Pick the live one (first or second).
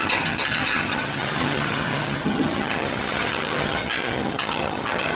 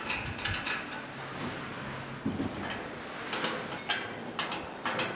second